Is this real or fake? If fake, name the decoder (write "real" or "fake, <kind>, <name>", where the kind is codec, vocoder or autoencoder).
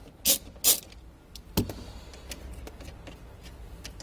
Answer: real